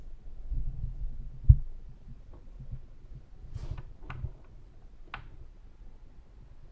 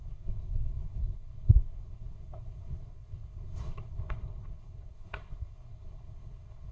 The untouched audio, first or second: first